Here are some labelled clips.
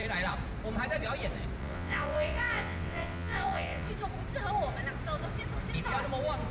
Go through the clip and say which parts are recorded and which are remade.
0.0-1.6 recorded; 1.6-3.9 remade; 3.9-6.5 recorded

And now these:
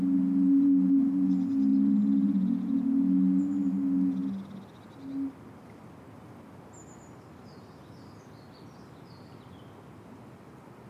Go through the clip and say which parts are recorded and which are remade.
0.0-10.9 recorded

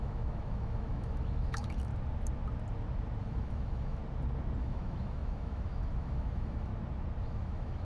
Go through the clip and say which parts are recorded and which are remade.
0.0-1.9 remade; 1.9-3.2 recorded; 3.2-4.0 remade; 4.0-4.6 recorded; 4.6-6.7 remade; 6.7-7.2 recorded; 7.2-7.8 remade

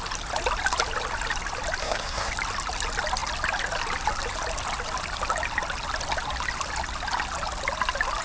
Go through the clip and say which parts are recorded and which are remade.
0.0-1.8 recorded; 1.8-2.3 remade; 2.3-8.2 recorded

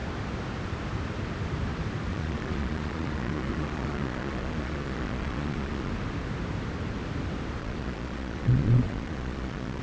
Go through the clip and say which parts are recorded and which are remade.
0.0-2.1 recorded; 2.1-5.9 remade; 5.9-7.6 recorded; 7.6-9.8 remade

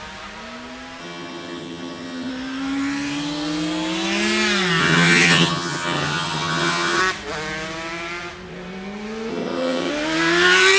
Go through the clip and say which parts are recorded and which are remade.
0.0-1.0 recorded; 1.0-2.3 remade; 2.3-4.8 recorded; 4.8-7.0 remade; 7.0-9.3 recorded; 9.3-9.9 remade; 9.9-10.8 recorded

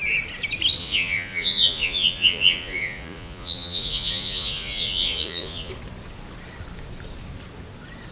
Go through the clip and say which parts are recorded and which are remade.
0.0-0.8 recorded; 0.8-5.7 remade; 5.7-8.1 recorded

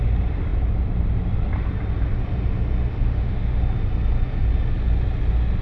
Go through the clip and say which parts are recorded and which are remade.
0.0-2.8 recorded; 2.8-3.6 remade; 3.6-5.6 recorded